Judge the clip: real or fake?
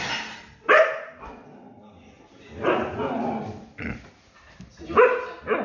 real